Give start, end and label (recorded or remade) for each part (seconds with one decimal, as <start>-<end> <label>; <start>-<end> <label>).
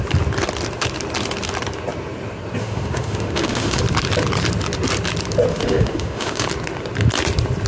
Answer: 0.0-2.6 recorded; 2.6-3.8 remade; 3.8-5.5 recorded; 5.5-6.5 remade; 6.5-7.7 recorded